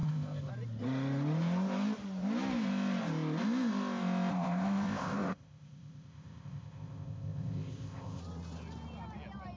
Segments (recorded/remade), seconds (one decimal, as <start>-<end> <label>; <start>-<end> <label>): 0.0-0.5 remade; 0.5-4.3 recorded; 4.3-8.2 remade; 8.2-9.6 recorded